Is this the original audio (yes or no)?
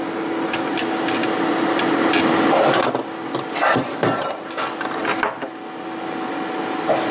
yes